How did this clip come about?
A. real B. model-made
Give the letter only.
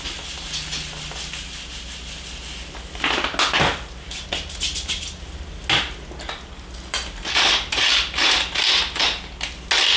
A